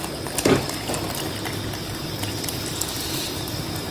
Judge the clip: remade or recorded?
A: recorded